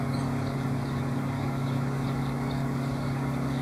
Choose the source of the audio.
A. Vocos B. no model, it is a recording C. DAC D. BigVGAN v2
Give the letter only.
C